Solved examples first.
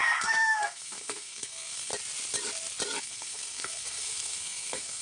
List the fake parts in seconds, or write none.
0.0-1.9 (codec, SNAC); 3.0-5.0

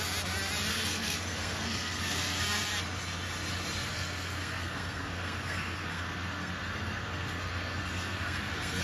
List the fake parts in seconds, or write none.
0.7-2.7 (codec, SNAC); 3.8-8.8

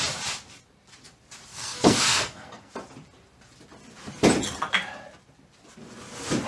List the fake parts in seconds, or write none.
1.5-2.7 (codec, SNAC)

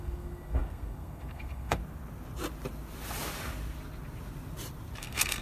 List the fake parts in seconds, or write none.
0.0-1.8 (codec, SNAC); 5.0-5.4